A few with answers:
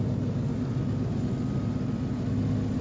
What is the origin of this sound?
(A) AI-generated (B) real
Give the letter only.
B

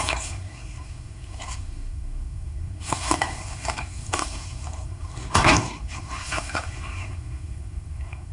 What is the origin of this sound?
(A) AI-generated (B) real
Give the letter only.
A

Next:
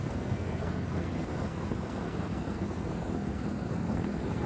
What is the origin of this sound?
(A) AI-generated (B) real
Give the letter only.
A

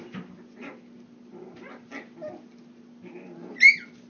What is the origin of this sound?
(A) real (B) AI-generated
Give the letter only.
A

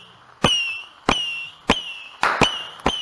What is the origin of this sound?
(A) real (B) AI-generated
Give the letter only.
A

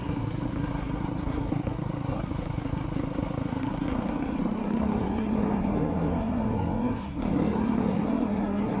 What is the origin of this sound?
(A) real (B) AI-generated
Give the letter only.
B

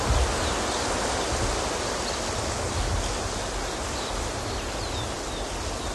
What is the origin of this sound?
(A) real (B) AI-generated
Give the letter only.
A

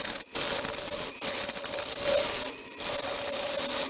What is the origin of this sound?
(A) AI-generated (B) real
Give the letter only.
B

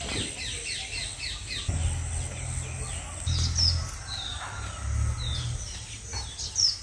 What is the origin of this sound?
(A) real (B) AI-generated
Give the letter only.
A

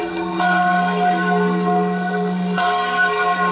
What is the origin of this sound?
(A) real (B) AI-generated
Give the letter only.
B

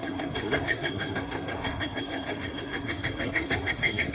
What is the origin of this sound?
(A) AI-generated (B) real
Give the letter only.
A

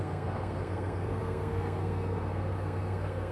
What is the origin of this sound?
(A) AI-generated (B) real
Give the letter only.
A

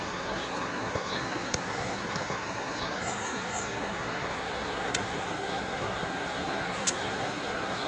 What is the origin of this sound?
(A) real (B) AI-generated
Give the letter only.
B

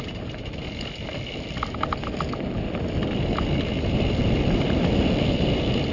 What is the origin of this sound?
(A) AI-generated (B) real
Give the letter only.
B